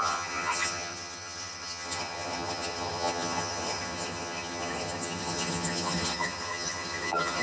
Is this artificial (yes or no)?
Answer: yes